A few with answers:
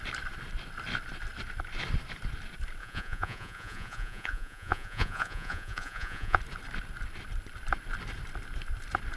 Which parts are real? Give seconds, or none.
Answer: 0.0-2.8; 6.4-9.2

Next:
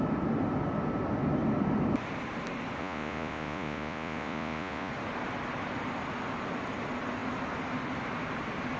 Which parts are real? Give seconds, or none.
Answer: 0.0-2.8; 4.9-8.8

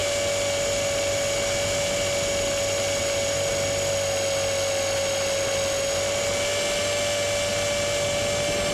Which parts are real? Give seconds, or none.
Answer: 0.0-8.7

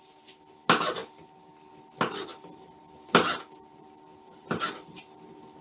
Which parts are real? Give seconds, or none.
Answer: 0.0-5.6